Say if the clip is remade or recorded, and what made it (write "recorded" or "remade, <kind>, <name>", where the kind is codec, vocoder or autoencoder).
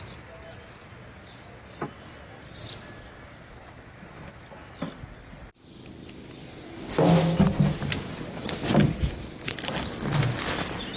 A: recorded